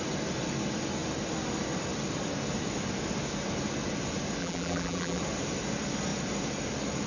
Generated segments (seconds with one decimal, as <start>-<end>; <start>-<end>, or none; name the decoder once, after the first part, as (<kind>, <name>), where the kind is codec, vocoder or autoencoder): 4.4-5.2 (vocoder, BigVGAN v2)